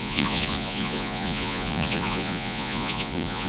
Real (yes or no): no